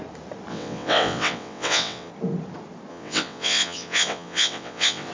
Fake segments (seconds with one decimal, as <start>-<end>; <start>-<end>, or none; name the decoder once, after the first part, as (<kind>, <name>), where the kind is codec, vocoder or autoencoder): 0.5-2.1 (vocoder, WaveNeXt); 2.9-5.1